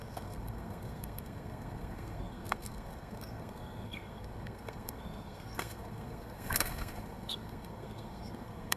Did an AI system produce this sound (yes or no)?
yes